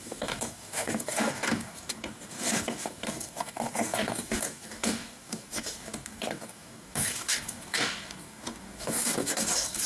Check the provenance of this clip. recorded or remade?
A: remade